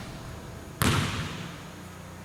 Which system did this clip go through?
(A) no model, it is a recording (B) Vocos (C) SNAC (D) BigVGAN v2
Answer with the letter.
A